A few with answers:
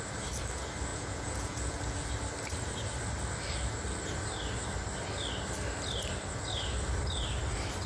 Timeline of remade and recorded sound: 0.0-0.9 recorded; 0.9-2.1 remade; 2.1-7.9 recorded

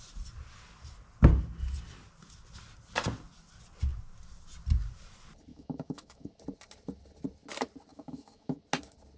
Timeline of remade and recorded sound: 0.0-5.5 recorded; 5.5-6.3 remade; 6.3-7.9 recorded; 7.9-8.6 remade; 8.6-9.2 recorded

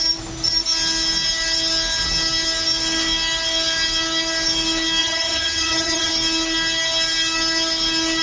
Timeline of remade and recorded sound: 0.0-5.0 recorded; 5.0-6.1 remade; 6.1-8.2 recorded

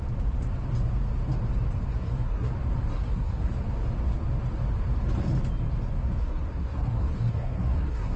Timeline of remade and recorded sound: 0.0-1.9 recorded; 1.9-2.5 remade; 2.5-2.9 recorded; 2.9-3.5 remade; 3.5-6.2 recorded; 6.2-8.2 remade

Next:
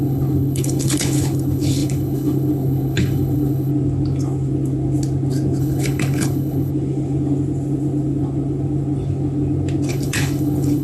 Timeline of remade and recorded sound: 0.0-3.7 remade; 3.7-5.6 recorded; 5.6-6.7 remade; 6.7-9.9 recorded; 9.9-10.8 remade

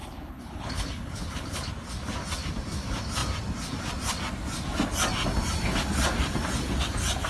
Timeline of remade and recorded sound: 0.0-1.7 remade; 1.7-7.3 recorded

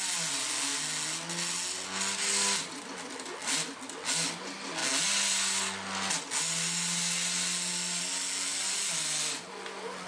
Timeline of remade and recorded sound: 0.0-10.1 recorded

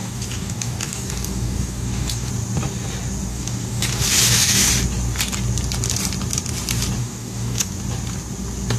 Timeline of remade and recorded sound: 0.0-2.3 remade; 2.3-3.3 recorded; 3.3-4.7 remade; 4.7-7.0 recorded; 7.0-7.7 remade; 7.7-8.8 recorded